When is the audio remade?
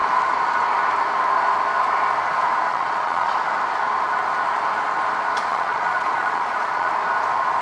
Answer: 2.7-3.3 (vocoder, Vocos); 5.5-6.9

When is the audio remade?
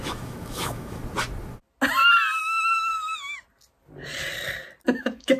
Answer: 0.0-1.0 (autoencoder, DAC-VAE); 2.4-2.9; 5.0-5.4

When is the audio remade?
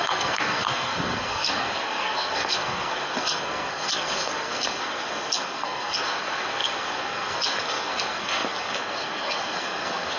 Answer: 0.0-10.2 (codec, SNAC)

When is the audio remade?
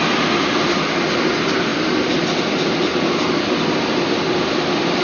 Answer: none